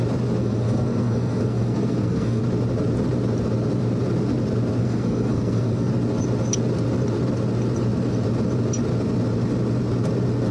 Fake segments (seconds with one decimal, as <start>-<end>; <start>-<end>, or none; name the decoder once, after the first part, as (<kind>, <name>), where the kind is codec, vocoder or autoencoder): 0.4-2.4 (codec, SNAC); 4.8-5.9